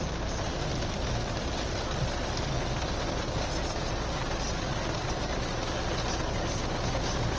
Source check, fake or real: real